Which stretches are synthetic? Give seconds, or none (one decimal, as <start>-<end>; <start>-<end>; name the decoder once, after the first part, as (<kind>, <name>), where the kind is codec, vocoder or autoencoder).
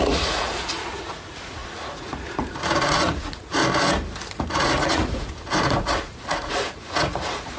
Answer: 0.0-3.6 (vocoder, Vocos); 4.3-7.6